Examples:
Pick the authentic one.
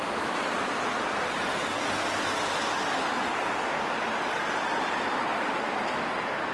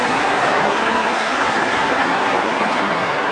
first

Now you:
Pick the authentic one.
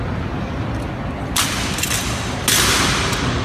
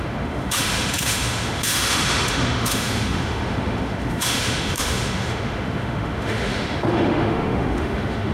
first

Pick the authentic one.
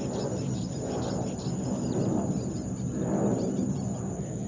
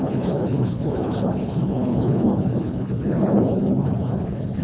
first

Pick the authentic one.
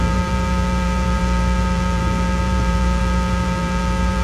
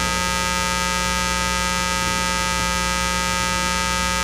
second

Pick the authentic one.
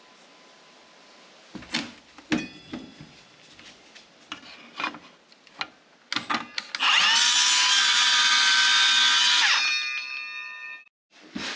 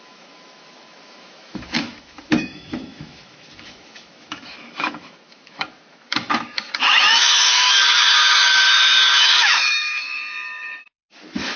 first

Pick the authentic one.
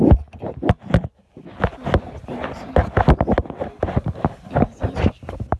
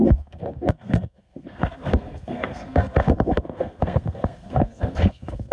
first